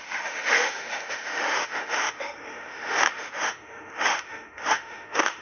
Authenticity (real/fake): fake